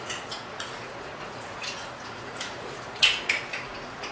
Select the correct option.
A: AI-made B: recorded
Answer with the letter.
A